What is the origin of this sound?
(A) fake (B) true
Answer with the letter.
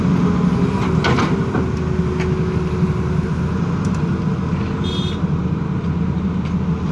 B